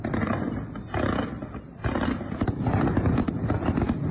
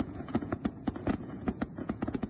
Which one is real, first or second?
first